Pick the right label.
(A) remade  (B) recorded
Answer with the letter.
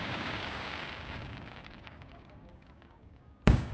A